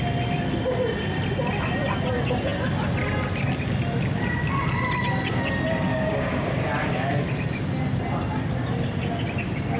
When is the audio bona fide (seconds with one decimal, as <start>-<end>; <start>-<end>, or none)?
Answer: 0.0-5.9; 6.6-9.8